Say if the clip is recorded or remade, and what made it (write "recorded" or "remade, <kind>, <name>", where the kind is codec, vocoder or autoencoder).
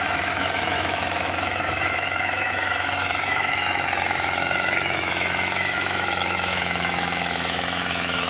remade, autoencoder, DAC-VAE